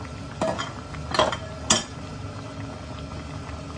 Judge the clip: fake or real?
real